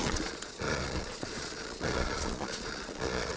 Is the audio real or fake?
fake